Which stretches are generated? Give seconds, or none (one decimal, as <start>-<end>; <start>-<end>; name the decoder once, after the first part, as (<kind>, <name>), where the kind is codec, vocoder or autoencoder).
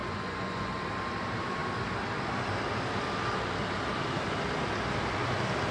0.0-0.7 (vocoder, Vocos)